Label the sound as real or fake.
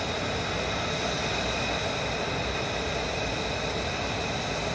real